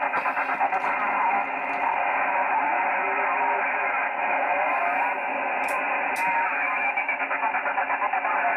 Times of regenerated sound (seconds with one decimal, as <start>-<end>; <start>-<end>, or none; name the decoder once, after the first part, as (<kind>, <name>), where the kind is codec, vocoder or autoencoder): 6.5-7.2 (autoencoder, DAC-VAE)